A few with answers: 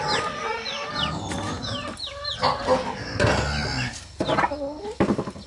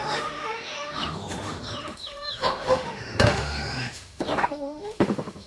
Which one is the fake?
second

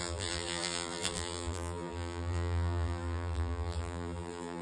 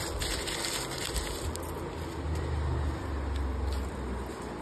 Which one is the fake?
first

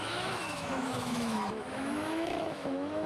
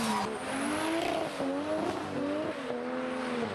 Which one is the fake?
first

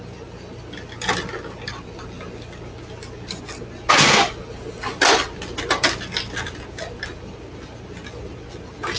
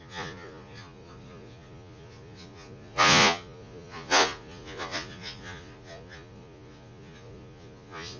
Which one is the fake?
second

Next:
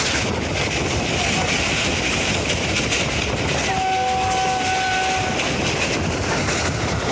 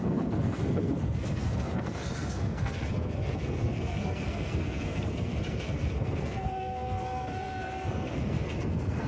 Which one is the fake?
second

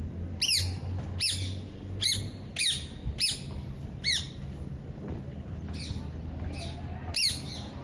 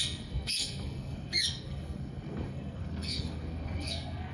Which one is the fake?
second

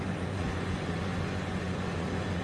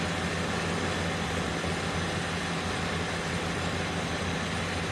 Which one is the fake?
first